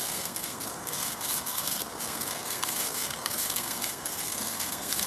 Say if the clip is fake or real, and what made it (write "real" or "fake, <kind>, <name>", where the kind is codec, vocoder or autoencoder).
fake, codec, SNAC